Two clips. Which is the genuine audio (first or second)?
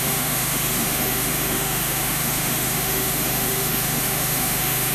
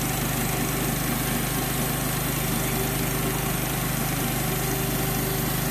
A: second